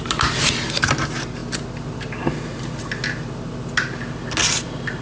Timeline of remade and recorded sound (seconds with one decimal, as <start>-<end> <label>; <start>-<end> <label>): 0.0-5.0 recorded